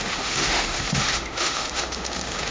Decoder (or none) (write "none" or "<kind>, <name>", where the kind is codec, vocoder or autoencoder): autoencoder, DAC-VAE